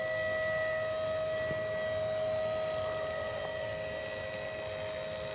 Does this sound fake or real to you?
real